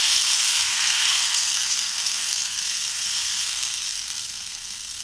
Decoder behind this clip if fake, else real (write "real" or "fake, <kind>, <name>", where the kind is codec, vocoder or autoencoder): fake, codec, SNAC